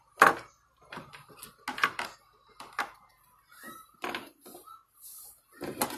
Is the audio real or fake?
real